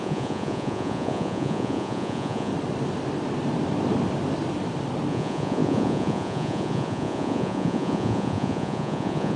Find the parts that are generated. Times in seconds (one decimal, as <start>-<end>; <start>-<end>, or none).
0.0-2.5; 5.1-9.4